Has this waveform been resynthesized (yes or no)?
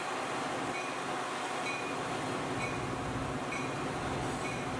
no